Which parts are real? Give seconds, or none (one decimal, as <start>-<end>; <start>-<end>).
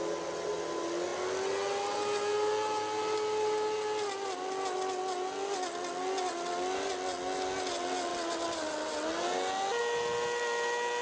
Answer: 0.0-11.0